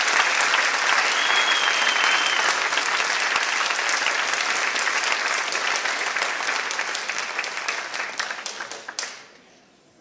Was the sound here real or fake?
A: real